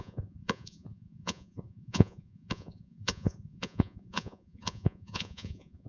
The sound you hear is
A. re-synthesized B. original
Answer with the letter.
A